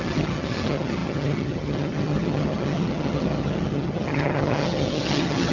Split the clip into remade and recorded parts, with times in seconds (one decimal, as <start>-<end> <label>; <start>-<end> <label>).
0.0-5.5 remade